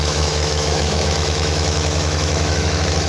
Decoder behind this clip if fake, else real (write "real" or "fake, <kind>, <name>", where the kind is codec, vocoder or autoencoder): fake, autoencoder, DAC-VAE